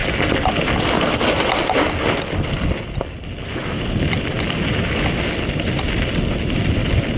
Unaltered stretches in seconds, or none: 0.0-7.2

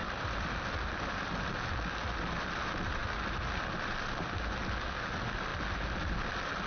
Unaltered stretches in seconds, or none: 0.0-6.7

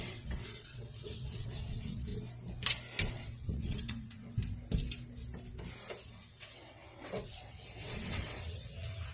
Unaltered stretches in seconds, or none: 2.1-3.1; 4.4-6.1

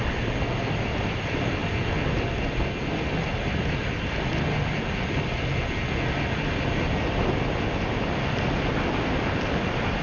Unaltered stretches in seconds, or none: 0.0-10.0